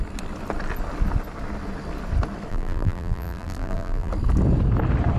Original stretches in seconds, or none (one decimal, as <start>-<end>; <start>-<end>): 0.0-2.5; 4.1-5.2